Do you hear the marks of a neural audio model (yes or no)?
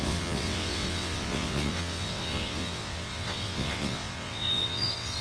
yes